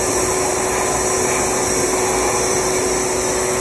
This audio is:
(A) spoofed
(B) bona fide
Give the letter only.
B